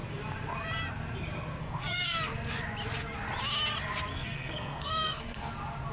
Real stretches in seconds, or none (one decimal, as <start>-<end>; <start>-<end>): 0.0-1.6; 2.3-4.1; 5.5-5.9